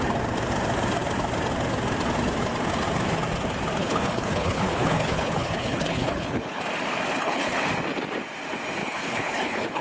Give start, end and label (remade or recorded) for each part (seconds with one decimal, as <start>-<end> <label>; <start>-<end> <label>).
0.0-3.8 recorded; 3.8-6.6 remade; 6.6-7.2 recorded; 7.2-7.7 remade; 7.7-8.8 recorded; 8.8-9.8 remade